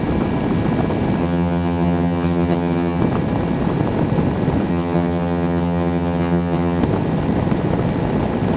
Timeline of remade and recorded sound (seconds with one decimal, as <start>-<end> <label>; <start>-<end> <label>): 0.0-1.2 recorded; 1.2-3.0 remade; 3.0-4.7 recorded; 4.7-6.8 remade; 6.8-8.6 recorded